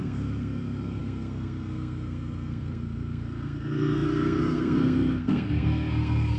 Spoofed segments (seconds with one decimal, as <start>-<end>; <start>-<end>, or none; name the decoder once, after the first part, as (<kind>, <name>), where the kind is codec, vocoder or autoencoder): 0.0-6.4 (codec, SNAC)

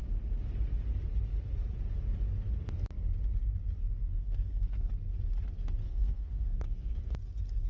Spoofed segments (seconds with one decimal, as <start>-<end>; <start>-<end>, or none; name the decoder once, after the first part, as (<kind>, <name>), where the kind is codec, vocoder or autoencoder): 4.0-4.9 (codec, SNAC); 5.8-7.0